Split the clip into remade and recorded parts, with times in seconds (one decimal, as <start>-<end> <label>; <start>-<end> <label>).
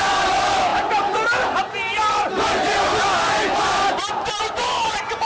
0.0-5.3 recorded